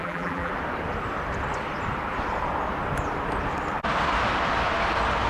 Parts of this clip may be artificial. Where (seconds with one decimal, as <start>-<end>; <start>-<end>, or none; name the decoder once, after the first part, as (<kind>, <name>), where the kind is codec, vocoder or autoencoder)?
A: 0.0-0.5 (vocoder, BigVGAN v2)